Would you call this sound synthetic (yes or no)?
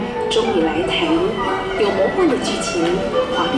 no